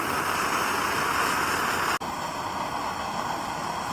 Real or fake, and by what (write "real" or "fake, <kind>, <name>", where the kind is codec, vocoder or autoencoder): real